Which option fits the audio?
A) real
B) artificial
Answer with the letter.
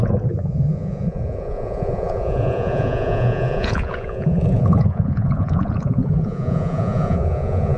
B